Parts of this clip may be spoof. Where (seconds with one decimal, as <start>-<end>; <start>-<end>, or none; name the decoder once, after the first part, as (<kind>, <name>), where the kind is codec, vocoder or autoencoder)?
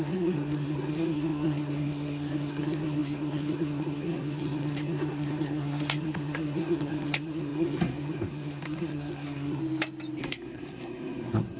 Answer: 0.0-9.6 (codec, SNAC); 10.2-11.6